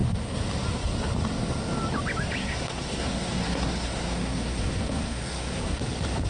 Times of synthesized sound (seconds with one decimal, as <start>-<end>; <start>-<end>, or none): 2.4-5.8